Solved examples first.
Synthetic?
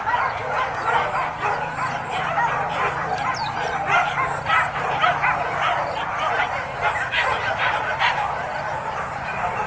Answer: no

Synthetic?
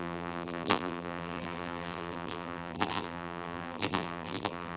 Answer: yes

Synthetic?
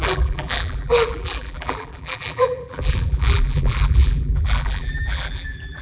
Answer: yes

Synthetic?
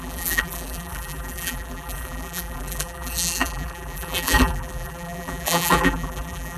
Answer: yes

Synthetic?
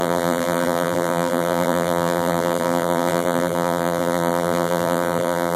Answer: yes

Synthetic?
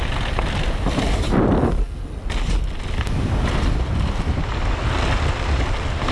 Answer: no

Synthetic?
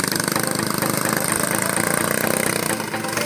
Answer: no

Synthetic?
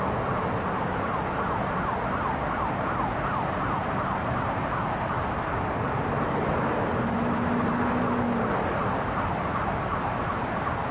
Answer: no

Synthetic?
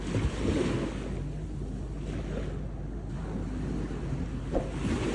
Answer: no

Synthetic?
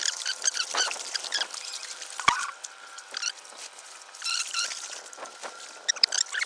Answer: yes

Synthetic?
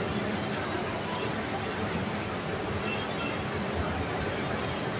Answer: no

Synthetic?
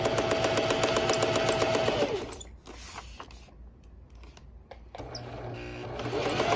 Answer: no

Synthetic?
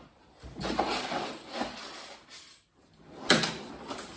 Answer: no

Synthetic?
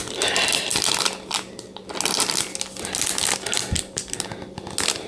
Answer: no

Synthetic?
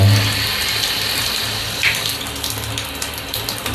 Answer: yes